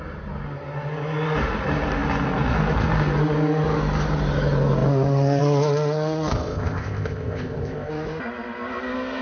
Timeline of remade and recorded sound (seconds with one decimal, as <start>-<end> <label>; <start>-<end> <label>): 0.0-6.3 recorded; 6.3-7.9 remade; 7.9-9.2 recorded